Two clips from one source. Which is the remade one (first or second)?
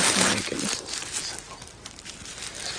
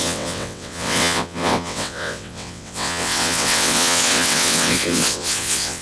second